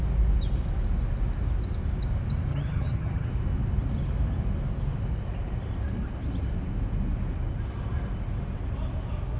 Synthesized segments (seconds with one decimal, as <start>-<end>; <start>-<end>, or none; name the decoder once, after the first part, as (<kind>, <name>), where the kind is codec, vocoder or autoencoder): 2.5-3.3 (vocoder, HiFi-GAN)

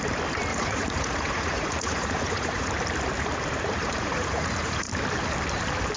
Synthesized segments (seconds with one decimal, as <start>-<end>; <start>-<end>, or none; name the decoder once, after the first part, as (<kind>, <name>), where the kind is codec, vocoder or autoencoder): 0.5-2.7 (vocoder, Vocos); 3.8-4.9

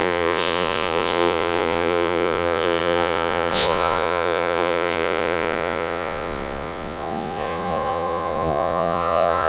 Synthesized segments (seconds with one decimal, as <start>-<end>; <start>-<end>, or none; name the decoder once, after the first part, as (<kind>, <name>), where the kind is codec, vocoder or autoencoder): 0.0-9.5 (vocoder, Vocos)

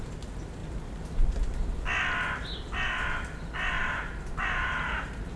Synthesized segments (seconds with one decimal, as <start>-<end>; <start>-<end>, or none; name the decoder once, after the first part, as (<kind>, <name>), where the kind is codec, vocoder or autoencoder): 3.8-5.4 (vocoder, BigVGAN v2)

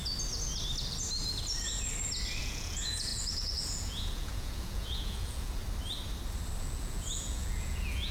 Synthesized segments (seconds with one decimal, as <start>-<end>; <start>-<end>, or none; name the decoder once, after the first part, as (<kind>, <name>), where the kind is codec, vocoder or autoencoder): 2.4-5.6 (vocoder, Vocos); 6.6-8.1

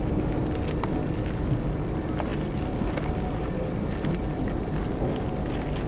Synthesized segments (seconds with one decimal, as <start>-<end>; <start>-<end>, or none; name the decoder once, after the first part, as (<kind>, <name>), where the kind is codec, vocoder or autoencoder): none

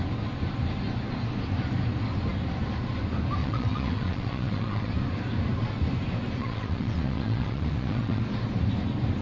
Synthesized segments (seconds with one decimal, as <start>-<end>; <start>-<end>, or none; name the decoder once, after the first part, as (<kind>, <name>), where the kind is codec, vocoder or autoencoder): 3.4-4.9 (vocoder, WaveNeXt); 6.4-8.2